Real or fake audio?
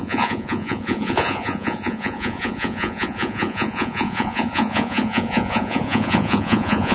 fake